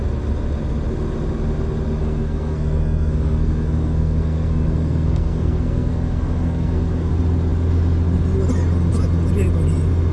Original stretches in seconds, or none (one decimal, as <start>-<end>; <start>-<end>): 0.0-2.0; 7.1-10.1